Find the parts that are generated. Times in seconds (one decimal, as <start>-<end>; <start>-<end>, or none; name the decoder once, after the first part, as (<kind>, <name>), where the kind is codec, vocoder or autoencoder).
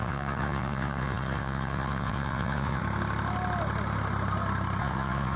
0.0-2.8 (vocoder, Vocos); 4.8-5.4